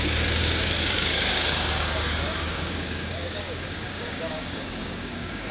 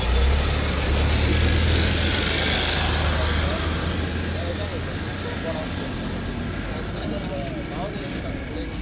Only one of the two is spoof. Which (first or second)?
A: first